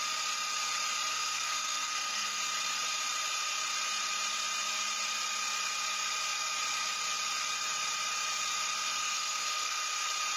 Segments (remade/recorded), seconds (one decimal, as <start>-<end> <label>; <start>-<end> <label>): 0.0-1.1 recorded; 1.1-2.4 remade; 2.4-9.0 recorded; 9.0-9.8 remade; 9.8-10.4 recorded